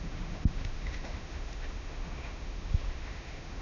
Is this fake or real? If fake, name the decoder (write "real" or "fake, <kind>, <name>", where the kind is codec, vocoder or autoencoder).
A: fake, autoencoder, DAC-VAE